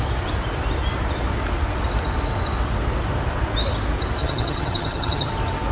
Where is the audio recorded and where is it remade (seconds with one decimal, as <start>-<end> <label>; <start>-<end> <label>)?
0.0-4.2 recorded; 4.2-5.3 remade; 5.3-5.7 recorded